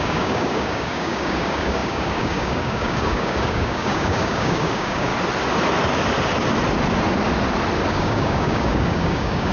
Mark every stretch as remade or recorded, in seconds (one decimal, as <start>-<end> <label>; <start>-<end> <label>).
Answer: 0.0-5.1 remade; 5.1-7.9 recorded; 7.9-9.5 remade